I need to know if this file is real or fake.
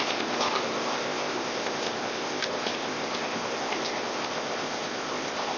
fake